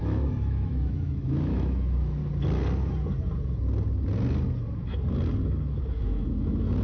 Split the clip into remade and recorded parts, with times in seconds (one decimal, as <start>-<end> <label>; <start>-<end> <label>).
0.0-2.2 remade; 2.2-6.0 recorded; 6.0-6.8 remade